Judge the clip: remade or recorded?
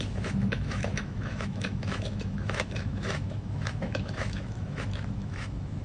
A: remade